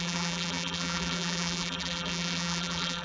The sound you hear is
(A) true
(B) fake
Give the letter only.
B